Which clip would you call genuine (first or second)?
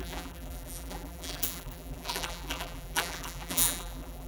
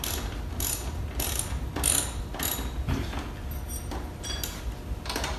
second